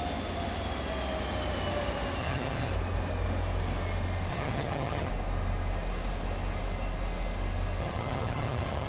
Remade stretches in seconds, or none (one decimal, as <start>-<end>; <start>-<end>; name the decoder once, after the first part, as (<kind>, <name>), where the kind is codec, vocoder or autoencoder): 2.2-2.7 (vocoder, HiFi-GAN); 4.3-5.1; 7.8-8.9